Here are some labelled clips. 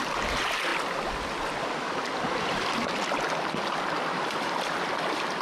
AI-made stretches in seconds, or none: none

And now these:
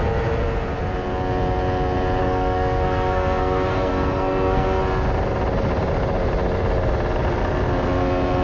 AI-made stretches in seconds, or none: 2.2-4.8 (codec, SNAC)